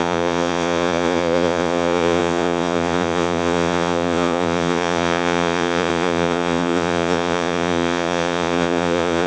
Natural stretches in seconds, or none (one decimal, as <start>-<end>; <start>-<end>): none